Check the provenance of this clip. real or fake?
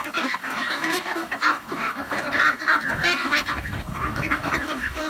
fake